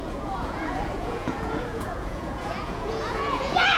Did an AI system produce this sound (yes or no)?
yes